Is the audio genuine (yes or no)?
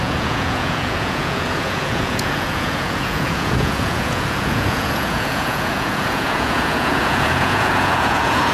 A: no